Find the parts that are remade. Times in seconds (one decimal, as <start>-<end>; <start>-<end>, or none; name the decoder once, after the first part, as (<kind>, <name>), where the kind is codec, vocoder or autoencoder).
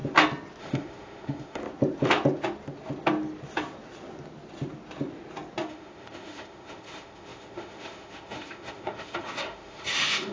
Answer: 0.6-1.6 (autoencoder, DAC-VAE); 5.7-10.3